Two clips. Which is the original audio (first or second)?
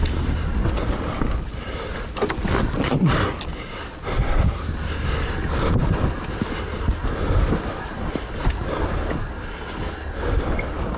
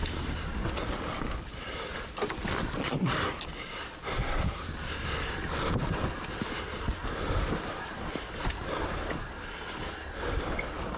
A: first